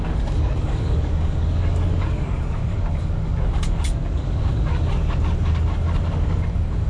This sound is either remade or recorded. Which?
remade